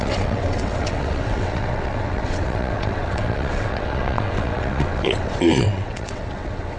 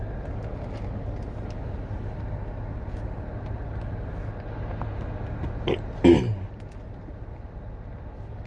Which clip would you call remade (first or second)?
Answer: first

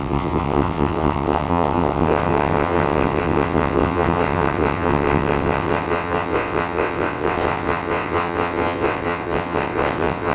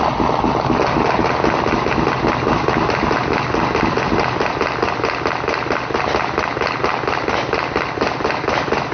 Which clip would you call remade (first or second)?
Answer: first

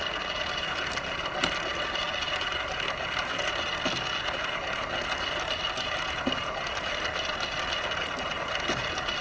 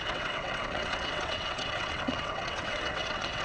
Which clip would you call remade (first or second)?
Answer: second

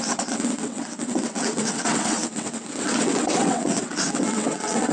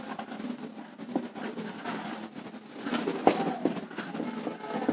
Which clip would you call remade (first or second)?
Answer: first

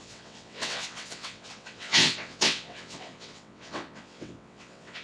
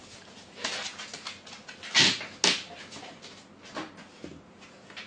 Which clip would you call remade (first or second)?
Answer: first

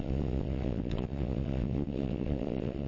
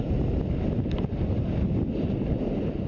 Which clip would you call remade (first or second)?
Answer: first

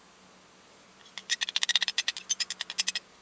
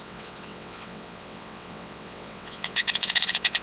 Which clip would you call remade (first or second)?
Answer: second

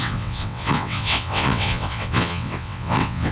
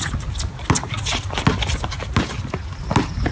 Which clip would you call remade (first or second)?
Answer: first